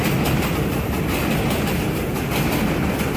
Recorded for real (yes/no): yes